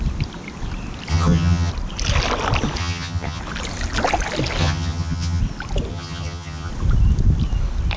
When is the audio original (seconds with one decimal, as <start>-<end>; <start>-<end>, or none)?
0.0-1.1; 1.7-2.8; 3.4-4.6; 5.4-5.9; 6.7-8.0